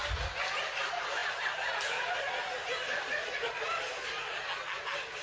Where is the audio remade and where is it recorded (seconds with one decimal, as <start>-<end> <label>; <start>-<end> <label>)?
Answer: 0.0-5.2 recorded